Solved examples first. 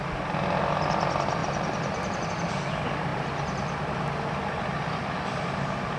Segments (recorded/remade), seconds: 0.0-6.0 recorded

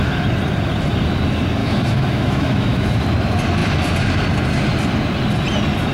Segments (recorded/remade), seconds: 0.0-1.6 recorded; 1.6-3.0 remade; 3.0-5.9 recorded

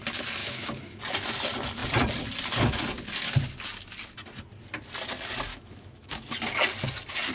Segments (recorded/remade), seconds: 0.0-0.4 recorded; 0.4-1.0 remade; 1.0-5.5 recorded; 5.5-6.3 remade; 6.3-7.3 recorded

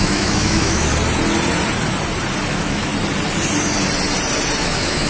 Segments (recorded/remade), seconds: 0.0-0.9 remade; 0.9-2.5 recorded; 2.5-2.9 remade; 2.9-4.6 recorded; 4.6-5.1 remade

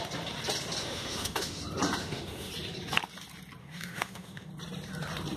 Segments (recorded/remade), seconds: 0.0-0.8 recorded; 0.8-1.6 remade; 1.6-2.0 recorded; 2.0-2.5 remade; 2.5-3.6 recorded; 3.6-4.5 remade; 4.5-5.4 recorded